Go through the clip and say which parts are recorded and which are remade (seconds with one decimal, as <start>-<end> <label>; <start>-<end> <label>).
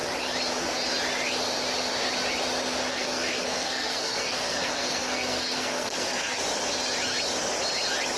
0.0-2.9 recorded; 2.9-6.4 remade; 6.4-8.2 recorded